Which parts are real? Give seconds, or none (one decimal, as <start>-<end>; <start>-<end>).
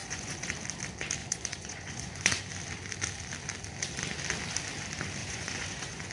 0.5-1.2; 2.4-5.2